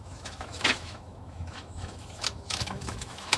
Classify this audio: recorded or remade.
remade